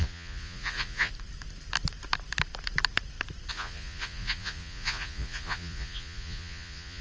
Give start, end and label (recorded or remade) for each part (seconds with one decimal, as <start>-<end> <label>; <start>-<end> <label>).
0.0-1.1 remade; 1.1-3.5 recorded; 3.5-7.0 remade